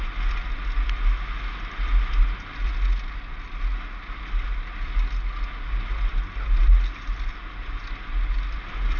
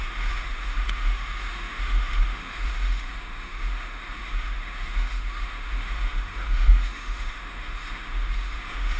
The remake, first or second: second